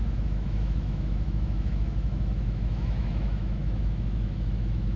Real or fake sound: fake